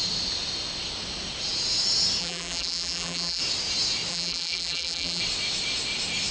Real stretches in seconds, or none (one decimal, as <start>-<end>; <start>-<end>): 0.0-2.2; 3.4-4.1; 5.2-6.3